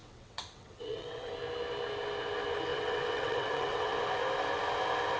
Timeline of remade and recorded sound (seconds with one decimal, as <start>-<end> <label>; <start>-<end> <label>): 0.0-1.3 remade; 1.3-2.7 recorded; 2.7-3.9 remade; 3.9-5.2 recorded